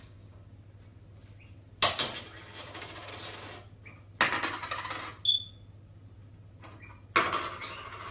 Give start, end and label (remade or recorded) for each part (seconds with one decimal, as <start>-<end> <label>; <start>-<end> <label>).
0.0-0.4 remade; 0.4-2.6 recorded; 2.6-3.1 remade; 3.1-8.1 recorded